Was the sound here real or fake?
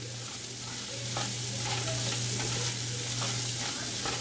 real